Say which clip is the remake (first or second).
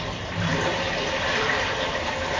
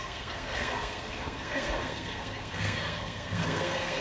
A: second